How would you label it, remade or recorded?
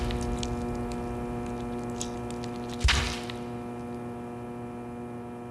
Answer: recorded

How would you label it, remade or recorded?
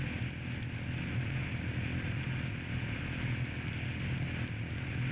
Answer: recorded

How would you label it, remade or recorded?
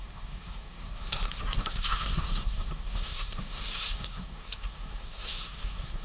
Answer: remade